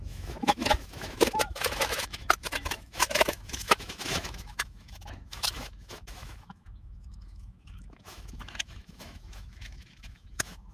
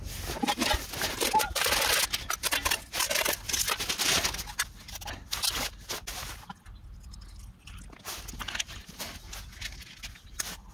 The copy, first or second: first